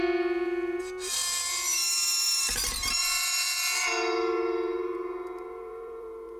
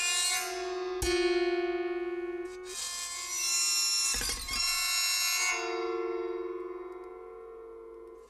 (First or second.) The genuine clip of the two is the second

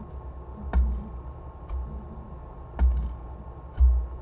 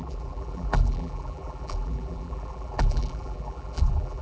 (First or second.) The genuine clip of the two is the first